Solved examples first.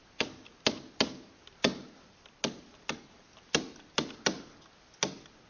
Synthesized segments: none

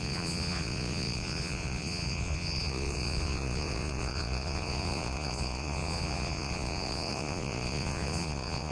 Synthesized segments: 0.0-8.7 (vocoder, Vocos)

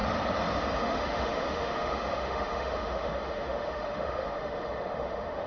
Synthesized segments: 0.8-5.5 (autoencoder, DAC-VAE)

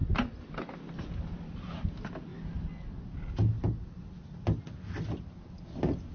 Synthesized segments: none